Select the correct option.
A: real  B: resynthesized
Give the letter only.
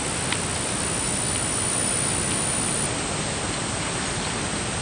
A